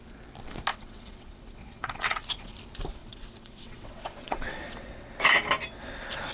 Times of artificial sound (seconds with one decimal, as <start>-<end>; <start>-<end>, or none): 0.7-2.5; 3.0-4.7